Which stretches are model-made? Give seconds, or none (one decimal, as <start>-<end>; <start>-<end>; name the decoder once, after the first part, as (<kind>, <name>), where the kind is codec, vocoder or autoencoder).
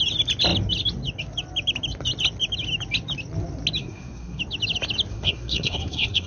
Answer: 3.8-4.4 (codec, SNAC); 5.1-6.3